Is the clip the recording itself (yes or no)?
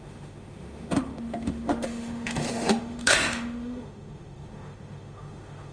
no